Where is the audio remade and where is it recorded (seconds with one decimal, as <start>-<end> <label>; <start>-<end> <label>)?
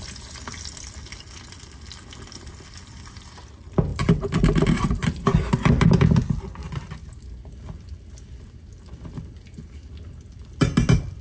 0.0-3.9 recorded; 3.9-5.7 remade; 5.7-11.2 recorded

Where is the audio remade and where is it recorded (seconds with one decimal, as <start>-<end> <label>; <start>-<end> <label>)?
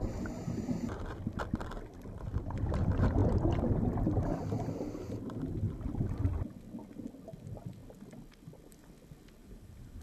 0.0-9.4 recorded; 9.4-10.0 remade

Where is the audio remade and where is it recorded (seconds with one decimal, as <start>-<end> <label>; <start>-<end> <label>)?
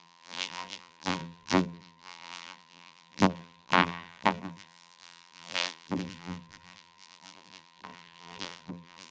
0.0-9.1 remade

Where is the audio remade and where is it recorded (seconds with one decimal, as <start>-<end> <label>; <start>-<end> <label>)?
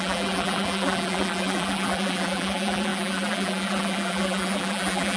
0.0-5.2 remade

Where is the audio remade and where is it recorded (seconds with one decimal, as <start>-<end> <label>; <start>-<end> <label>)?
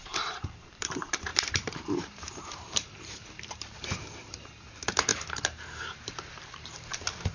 0.0-1.3 remade; 1.3-1.9 recorded; 1.9-7.3 remade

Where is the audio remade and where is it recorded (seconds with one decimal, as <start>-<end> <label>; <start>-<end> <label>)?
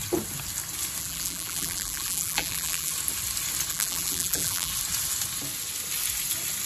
0.0-1.0 recorded; 1.0-2.9 remade; 2.9-3.7 recorded; 3.7-4.7 remade; 4.7-6.7 recorded